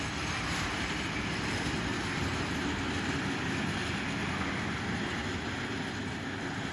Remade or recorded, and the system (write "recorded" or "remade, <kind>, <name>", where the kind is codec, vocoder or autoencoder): recorded